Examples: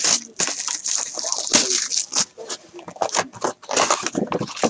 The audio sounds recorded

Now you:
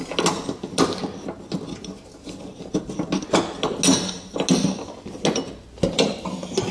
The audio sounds recorded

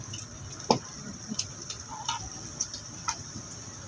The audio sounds recorded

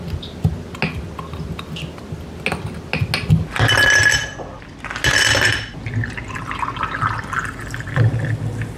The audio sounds recorded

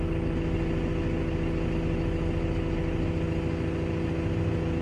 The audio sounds recorded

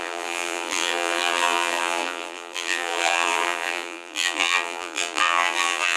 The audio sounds remade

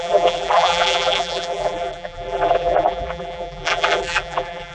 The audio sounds remade